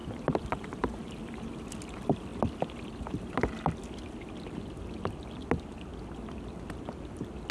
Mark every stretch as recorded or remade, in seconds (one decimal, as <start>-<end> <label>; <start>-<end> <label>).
0.0-1.0 remade; 1.0-7.5 recorded

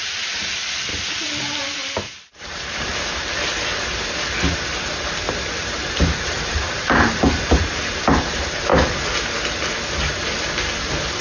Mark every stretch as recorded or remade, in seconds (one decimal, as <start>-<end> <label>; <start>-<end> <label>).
0.0-0.9 remade; 0.9-2.4 recorded; 2.4-2.9 remade; 2.9-5.3 recorded; 5.3-8.7 remade; 8.7-11.2 recorded

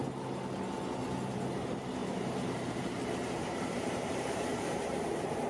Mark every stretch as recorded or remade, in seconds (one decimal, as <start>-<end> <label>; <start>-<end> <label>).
0.0-2.0 recorded; 2.0-5.5 remade

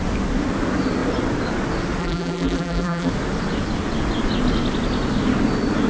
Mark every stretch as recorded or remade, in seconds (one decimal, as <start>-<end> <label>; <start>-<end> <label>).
0.0-2.0 recorded; 2.0-3.1 remade; 3.1-5.9 recorded